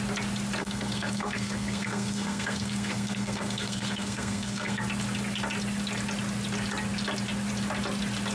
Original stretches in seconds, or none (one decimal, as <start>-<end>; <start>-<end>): 0.0-0.6; 4.8-8.3